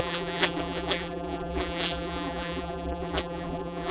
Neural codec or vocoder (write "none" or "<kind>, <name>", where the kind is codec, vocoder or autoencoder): vocoder, BigVGAN v2